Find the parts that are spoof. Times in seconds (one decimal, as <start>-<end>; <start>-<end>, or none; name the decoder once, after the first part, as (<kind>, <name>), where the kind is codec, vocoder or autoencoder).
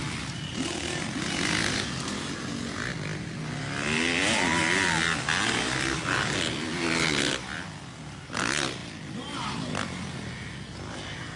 none